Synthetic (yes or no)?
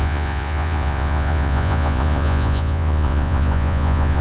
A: yes